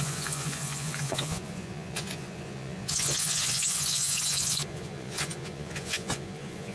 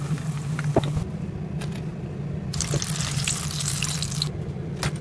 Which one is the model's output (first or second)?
first